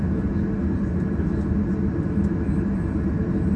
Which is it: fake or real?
real